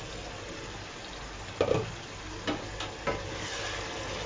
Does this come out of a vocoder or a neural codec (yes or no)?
no